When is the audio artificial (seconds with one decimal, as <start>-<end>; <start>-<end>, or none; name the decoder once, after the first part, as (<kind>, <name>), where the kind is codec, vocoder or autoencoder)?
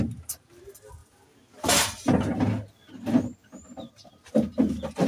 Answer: 3.6-4.5 (vocoder, BigVGAN v2)